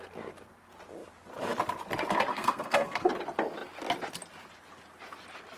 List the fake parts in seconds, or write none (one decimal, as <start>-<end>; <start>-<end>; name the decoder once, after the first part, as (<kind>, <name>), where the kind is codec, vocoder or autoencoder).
2.3-3.1 (codec, SNAC)